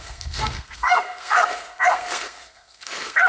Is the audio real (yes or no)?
no